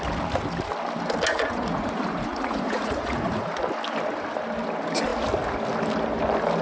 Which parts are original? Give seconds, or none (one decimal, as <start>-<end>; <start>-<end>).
0.0-1.3; 3.5-6.6